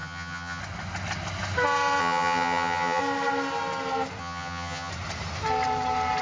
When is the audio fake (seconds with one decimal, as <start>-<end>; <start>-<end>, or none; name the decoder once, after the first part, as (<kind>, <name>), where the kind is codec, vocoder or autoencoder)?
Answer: 0.0-0.6 (vocoder, HiFi-GAN); 2.0-3.0; 4.2-4.9